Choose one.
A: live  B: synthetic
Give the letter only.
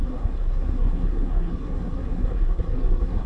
B